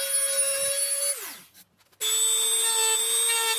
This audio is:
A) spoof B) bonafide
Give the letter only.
B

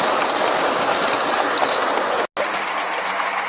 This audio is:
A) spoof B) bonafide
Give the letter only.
B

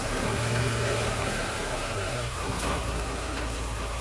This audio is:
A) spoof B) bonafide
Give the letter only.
A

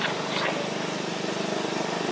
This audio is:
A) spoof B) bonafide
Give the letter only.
B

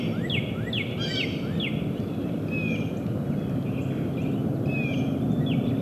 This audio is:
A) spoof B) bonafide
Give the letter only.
B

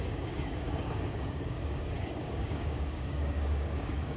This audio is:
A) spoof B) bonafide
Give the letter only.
A